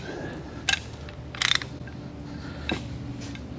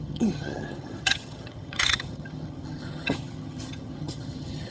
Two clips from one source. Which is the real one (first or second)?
first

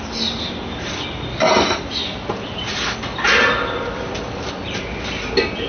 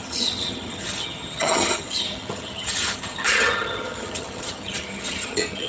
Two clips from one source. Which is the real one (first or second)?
first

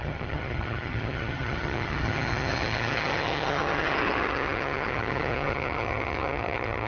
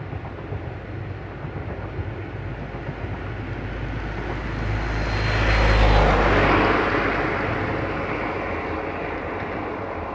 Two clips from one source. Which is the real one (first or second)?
second